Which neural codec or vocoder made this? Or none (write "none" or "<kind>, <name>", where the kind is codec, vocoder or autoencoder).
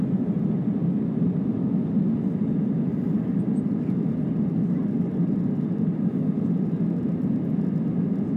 none